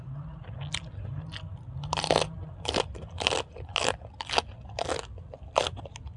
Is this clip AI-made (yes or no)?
no